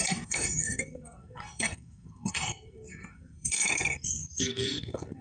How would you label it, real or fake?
fake